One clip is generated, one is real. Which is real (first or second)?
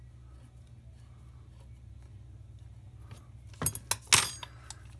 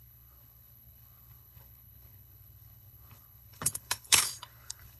first